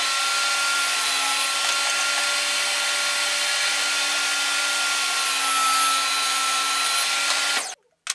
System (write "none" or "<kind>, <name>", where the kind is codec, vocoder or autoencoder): none